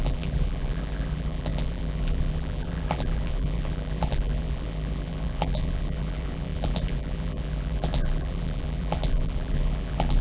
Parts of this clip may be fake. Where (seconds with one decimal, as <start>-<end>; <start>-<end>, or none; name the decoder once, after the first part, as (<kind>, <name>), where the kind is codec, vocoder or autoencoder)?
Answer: 0.0-10.2 (vocoder, BigVGAN v2)